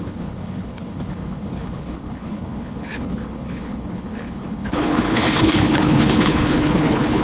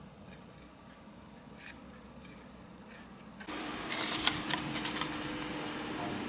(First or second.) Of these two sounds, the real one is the second